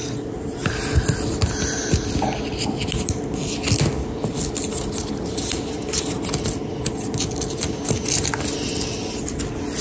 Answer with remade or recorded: recorded